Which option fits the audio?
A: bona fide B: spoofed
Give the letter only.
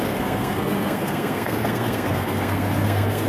B